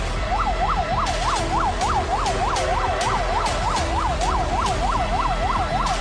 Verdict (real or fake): real